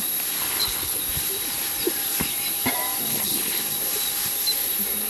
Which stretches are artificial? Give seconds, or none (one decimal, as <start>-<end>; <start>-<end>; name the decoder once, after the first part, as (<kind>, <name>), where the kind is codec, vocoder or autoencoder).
0.4-1.0 (codec, HILCodec); 3.1-3.6